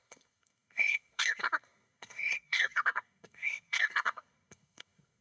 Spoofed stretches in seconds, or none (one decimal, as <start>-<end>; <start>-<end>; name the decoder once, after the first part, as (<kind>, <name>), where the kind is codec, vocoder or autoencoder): 0.0-5.2 (codec, SNAC)